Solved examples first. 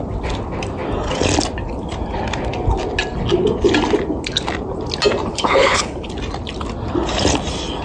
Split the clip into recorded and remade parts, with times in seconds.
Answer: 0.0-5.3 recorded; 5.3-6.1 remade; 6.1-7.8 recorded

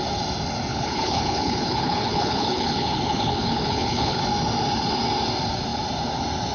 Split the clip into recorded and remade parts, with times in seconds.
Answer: 0.0-0.7 recorded; 0.7-4.2 remade; 4.2-6.5 recorded

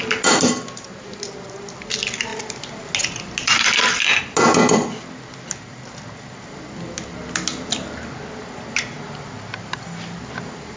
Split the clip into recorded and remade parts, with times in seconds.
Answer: 0.0-10.8 recorded